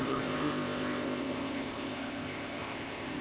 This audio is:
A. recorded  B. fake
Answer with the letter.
B